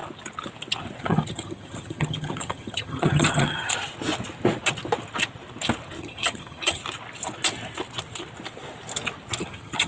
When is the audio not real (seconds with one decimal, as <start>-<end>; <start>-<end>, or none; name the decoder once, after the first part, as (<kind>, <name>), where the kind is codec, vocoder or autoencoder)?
1.0-3.7 (vocoder, HiFi-GAN); 6.0-6.8; 9.4-9.9